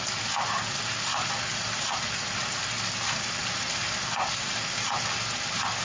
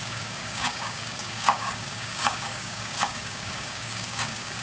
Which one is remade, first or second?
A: second